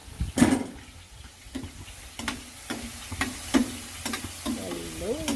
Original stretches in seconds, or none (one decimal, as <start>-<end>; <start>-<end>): 0.0-5.4